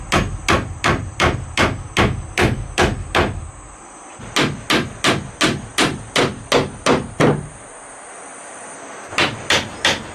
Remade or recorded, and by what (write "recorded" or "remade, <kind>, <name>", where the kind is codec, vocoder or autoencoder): recorded